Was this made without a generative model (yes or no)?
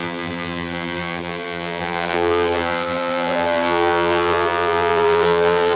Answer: no